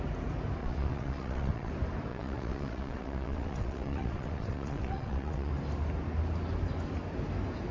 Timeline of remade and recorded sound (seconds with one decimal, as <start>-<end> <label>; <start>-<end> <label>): 0.0-0.6 recorded; 0.6-1.7 remade; 1.7-2.1 recorded; 2.1-5.5 remade; 5.5-7.7 recorded